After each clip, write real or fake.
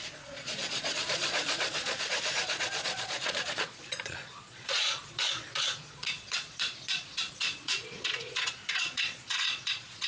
fake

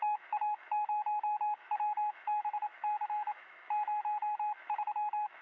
fake